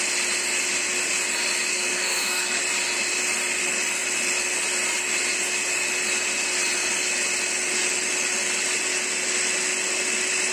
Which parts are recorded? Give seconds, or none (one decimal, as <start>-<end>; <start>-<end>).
0.0-1.7; 2.6-10.5